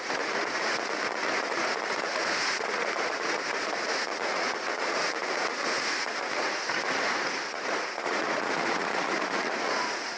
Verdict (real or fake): fake